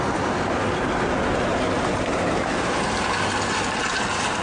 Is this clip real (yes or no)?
yes